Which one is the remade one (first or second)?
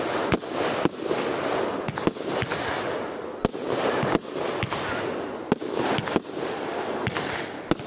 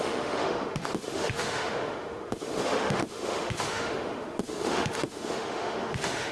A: second